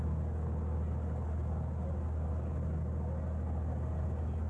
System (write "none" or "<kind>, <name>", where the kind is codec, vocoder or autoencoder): none